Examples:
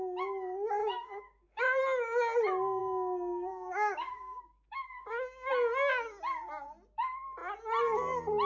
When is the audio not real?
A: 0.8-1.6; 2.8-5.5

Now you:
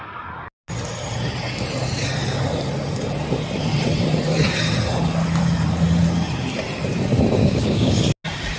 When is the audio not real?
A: 7.4-8.0

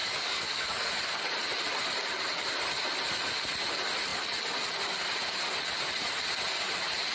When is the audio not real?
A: 0.0-0.9